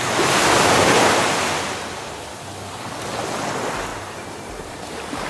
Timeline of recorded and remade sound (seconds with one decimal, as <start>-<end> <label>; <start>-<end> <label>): 0.0-3.9 recorded; 3.9-5.3 remade